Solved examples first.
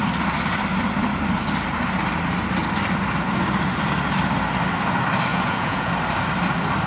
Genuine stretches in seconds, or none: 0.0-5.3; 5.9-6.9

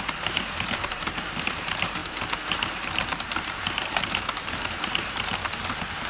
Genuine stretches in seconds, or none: none